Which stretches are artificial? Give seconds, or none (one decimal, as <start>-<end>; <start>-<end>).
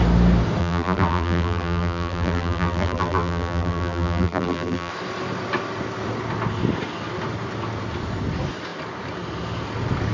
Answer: 0.6-4.9